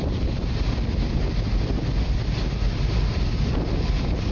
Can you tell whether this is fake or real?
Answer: fake